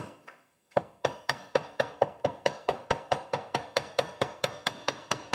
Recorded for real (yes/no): no